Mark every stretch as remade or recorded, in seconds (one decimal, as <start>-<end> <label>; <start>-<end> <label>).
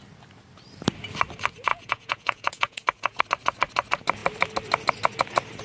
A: 0.0-1.7 recorded; 1.7-3.2 remade; 3.2-5.6 recorded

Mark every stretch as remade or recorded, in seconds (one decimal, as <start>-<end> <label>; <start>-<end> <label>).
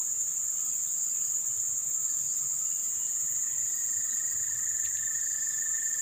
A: 0.0-2.8 recorded; 2.8-4.0 remade; 4.0-6.0 recorded